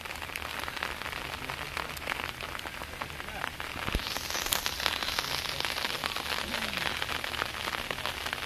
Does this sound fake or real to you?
real